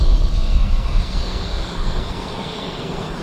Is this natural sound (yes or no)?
no